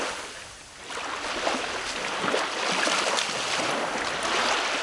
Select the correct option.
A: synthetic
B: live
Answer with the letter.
B